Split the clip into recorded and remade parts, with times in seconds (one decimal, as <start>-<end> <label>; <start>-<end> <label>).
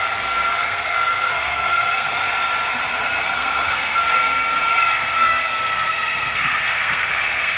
0.0-2.2 remade; 2.2-3.0 recorded; 3.0-7.6 remade